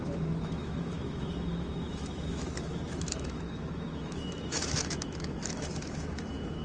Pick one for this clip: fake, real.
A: fake